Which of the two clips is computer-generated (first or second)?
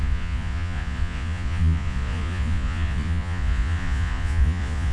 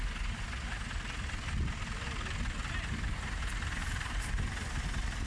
first